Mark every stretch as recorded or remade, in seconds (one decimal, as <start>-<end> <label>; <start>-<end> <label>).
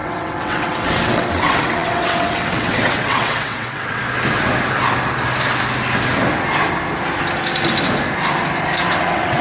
0.0-4.0 remade; 4.0-9.0 recorded; 9.0-9.4 remade